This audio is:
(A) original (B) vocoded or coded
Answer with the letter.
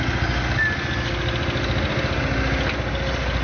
A